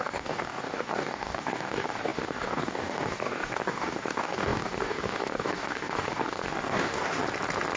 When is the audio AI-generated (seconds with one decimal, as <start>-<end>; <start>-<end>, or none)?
0.0-7.2